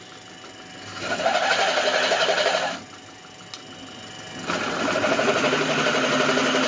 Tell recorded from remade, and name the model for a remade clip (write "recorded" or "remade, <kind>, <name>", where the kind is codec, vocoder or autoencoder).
recorded